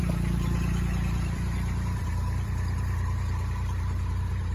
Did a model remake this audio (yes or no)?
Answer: yes